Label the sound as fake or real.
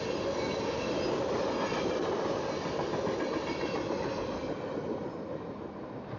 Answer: real